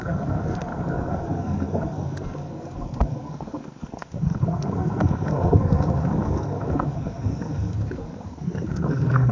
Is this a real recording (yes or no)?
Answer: no